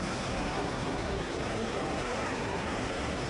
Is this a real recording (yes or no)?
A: no